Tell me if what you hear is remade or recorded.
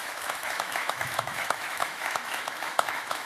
remade